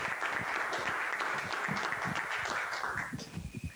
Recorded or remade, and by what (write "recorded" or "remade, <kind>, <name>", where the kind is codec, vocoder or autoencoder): recorded